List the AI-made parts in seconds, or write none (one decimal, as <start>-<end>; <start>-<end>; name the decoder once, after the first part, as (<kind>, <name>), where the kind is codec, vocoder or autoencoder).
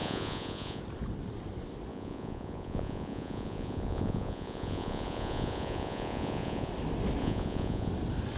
0.0-0.8 (vocoder, Vocos); 1.9-6.7; 7.2-7.9